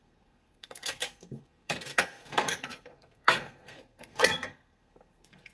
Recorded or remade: remade